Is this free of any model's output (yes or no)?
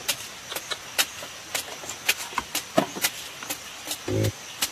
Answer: yes